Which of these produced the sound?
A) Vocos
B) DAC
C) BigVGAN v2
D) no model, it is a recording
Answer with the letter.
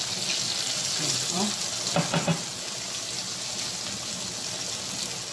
D